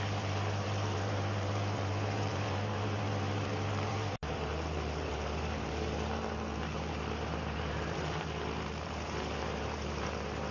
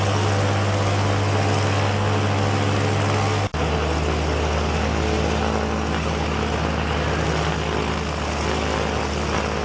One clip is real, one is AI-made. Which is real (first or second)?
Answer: second